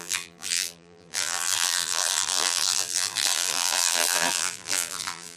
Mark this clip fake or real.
fake